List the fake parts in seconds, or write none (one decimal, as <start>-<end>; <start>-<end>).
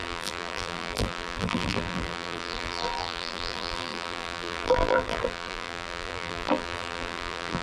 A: 0.0-7.6